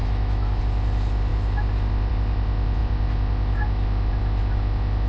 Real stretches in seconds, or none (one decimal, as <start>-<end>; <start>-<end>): 0.6-5.1